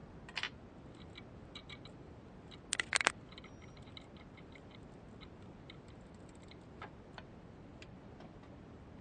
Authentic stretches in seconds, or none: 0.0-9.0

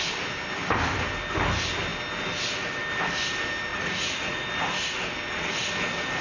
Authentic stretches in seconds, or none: 0.0-3.7; 4.4-6.2

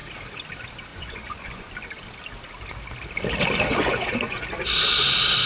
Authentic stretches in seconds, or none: 0.0-0.9; 1.7-3.7; 4.4-5.5

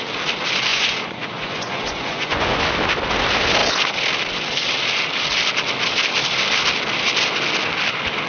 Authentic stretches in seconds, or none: 0.0-0.7; 2.6-8.3